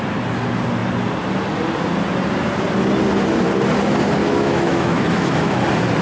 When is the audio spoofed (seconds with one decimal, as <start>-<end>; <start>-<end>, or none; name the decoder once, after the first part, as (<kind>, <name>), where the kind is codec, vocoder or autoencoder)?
4.2-5.6 (autoencoder, DAC-VAE)